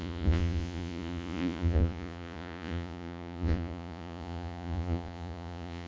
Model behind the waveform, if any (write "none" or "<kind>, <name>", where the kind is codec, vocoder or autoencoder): vocoder, Vocos